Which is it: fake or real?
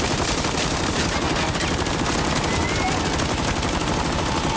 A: real